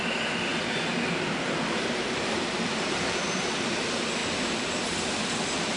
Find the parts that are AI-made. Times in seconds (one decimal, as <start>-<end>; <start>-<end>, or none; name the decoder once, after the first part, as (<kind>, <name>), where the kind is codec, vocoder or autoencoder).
0.5-3.8 (vocoder, BigVGAN v2)